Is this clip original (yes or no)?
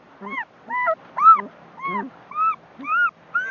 yes